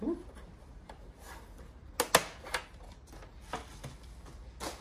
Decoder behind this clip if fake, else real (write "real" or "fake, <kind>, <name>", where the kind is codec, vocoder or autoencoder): real